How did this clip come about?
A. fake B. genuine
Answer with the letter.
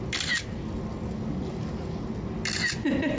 B